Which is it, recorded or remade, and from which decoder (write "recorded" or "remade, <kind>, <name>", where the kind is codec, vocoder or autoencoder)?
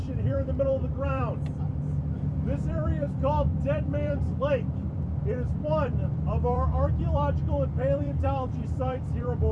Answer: remade, vocoder, BigVGAN v2